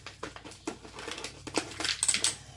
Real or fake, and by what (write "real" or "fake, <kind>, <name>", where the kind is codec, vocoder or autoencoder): real